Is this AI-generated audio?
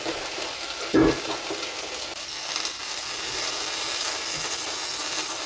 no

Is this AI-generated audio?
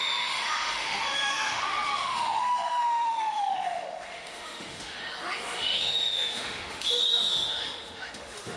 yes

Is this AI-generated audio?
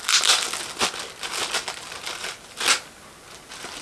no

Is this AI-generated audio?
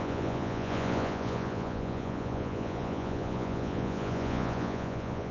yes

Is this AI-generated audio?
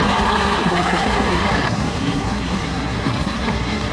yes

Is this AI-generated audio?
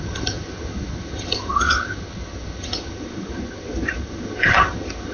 yes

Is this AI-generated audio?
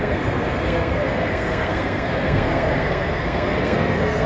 yes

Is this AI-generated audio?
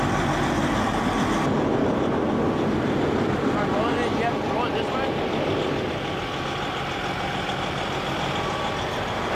no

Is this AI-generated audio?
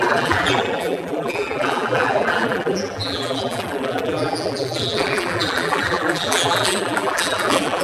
yes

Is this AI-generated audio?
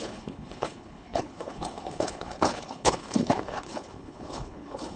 yes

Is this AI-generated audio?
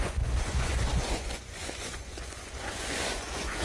yes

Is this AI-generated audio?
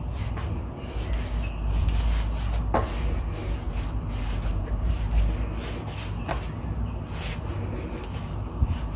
no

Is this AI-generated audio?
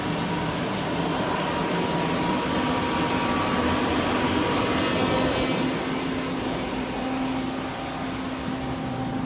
no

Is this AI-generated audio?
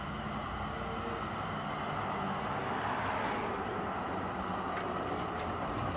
no